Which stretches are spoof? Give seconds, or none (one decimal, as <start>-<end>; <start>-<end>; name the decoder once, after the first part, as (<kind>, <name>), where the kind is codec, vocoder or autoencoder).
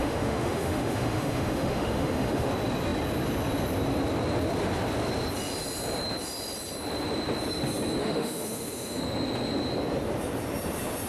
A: 0.0-2.5 (autoencoder, DAC-VAE); 8.0-9.0